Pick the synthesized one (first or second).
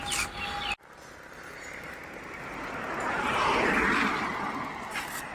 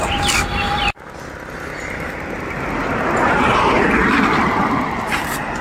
second